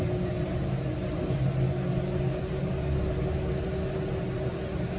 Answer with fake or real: real